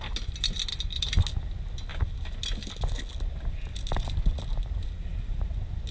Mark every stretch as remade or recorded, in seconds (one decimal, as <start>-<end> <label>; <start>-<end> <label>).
0.0-5.9 recorded